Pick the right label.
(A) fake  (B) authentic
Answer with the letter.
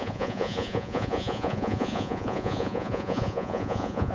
A